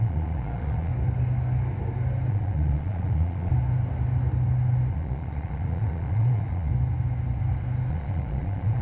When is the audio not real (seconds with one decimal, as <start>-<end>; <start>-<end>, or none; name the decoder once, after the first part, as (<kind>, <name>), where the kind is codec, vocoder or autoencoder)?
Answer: 0.0-0.9 (vocoder, Vocos); 2.3-3.5; 4.9-6.7; 7.9-8.8

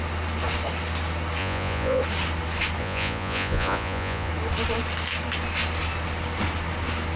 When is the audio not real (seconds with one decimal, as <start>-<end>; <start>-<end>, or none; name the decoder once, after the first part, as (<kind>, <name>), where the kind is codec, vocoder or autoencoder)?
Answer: 1.4-2.0 (vocoder, Vocos); 2.8-4.3

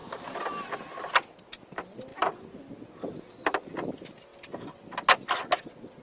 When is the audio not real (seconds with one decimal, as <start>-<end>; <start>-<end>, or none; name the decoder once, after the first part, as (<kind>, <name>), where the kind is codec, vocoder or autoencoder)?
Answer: none

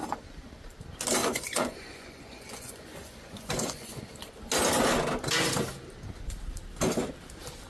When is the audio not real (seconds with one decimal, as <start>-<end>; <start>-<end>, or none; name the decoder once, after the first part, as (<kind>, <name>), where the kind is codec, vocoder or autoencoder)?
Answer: 1.2-4.0 (vocoder, Vocos)

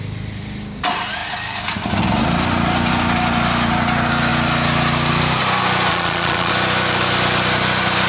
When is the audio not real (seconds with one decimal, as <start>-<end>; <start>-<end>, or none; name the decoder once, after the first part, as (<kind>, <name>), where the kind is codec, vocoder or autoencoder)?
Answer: 5.9-6.5 (vocoder, Vocos)

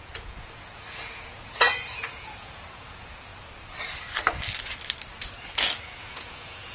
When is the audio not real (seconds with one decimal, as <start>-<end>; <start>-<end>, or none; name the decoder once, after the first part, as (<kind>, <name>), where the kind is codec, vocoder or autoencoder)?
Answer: 0.0-3.3 (vocoder, Vocos); 5.8-6.7